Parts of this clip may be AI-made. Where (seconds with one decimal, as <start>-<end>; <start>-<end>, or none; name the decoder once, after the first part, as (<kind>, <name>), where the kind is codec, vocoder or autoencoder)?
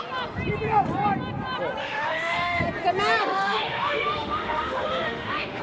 1.8-2.6 (autoencoder, DAC-VAE); 3.2-5.6